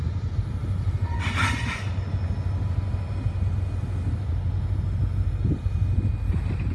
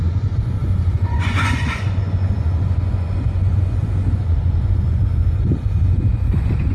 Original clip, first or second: first